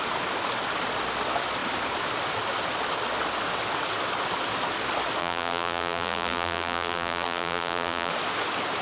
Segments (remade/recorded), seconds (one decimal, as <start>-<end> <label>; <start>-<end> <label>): 0.0-5.2 recorded; 5.2-8.1 remade; 8.1-8.8 recorded